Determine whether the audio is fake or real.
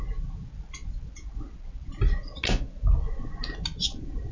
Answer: real